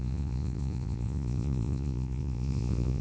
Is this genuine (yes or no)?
no